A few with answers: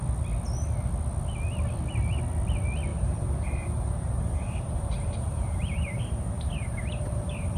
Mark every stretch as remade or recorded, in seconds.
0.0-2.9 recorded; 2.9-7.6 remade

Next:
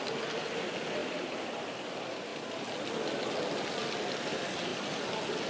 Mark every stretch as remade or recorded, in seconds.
0.0-1.0 recorded; 1.0-1.7 remade; 1.7-4.7 recorded; 4.7-5.5 remade

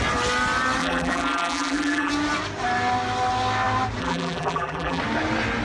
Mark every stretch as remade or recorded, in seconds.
0.0-0.8 recorded; 0.8-2.1 remade; 2.1-4.0 recorded; 4.0-5.0 remade; 5.0-5.6 recorded

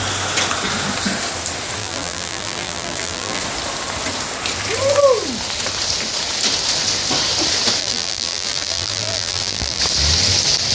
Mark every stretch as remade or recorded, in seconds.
0.0-1.8 recorded; 1.8-3.4 remade; 3.4-7.8 recorded; 7.8-9.8 remade; 9.8-10.7 recorded